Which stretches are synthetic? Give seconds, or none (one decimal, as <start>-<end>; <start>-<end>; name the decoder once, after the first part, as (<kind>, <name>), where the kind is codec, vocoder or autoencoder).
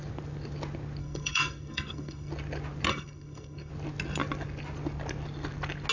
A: 1.0-2.3 (codec, SNAC); 2.9-3.7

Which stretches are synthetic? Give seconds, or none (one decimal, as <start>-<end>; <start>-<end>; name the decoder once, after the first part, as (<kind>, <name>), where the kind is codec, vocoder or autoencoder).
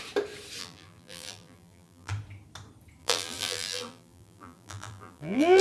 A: 0.6-2.1 (vocoder, BigVGAN v2); 3.0-5.6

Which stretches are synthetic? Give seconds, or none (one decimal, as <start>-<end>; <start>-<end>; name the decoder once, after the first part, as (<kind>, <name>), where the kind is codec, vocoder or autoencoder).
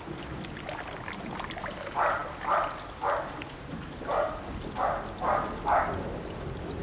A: none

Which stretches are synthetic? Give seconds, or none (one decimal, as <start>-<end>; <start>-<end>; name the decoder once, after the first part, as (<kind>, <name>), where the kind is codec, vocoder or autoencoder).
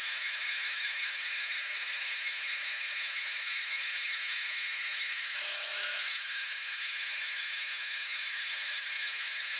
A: 0.0-9.6 (autoencoder, DAC-VAE)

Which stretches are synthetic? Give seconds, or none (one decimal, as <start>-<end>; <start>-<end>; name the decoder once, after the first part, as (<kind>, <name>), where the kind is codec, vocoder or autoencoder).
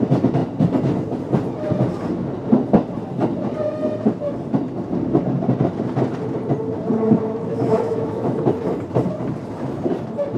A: 7.5-8.4 (autoencoder, DAC-VAE)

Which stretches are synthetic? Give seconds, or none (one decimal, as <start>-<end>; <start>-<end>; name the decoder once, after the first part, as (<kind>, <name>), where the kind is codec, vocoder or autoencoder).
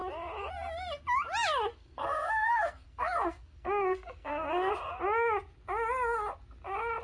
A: 1.7-4.7 (codec, SNAC)